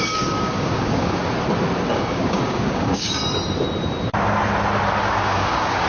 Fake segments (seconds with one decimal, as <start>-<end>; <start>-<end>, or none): 0.0-1.2; 1.9-3.2; 5.0-5.9